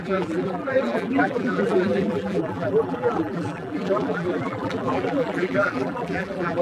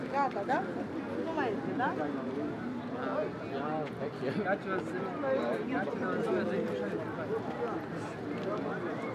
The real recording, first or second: second